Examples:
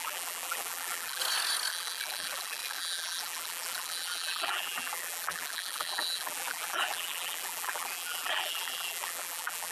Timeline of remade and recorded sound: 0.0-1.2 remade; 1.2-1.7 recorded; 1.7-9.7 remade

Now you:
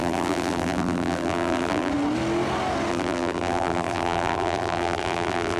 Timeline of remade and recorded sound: 0.0-1.9 remade; 1.9-2.9 recorded; 2.9-5.6 remade

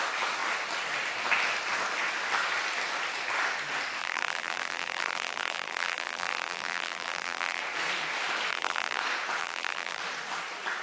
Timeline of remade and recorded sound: 0.0-4.0 recorded; 4.0-7.6 remade; 7.6-8.5 recorded; 8.5-9.0 remade; 9.0-9.4 recorded; 9.4-10.0 remade; 10.0-10.8 recorded

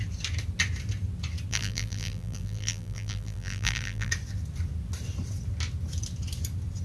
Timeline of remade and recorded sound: 0.0-1.5 recorded; 1.5-4.1 remade; 4.1-6.8 recorded

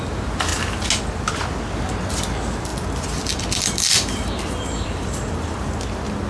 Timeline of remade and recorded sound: 0.0-2.7 recorded; 2.7-5.7 remade; 5.7-6.3 recorded

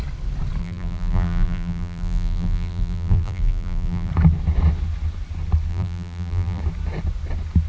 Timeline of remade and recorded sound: 0.0-0.6 recorded; 0.6-4.1 remade; 4.1-5.7 recorded; 5.7-6.6 remade; 6.6-7.7 recorded

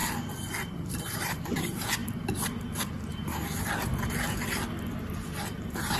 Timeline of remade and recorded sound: 0.0-0.7 recorded; 0.7-2.0 remade; 2.0-5.6 recorded; 5.6-6.0 remade